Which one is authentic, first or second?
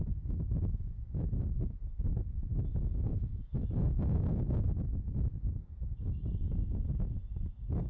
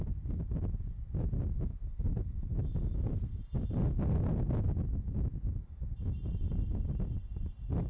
second